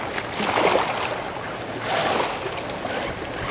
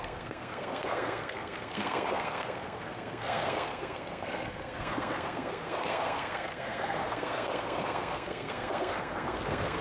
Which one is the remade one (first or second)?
second